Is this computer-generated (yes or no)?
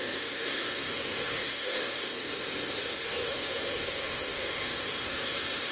yes